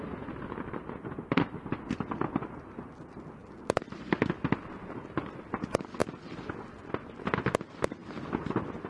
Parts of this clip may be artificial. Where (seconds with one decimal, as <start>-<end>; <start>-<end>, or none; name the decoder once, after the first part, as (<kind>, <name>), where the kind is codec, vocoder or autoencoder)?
none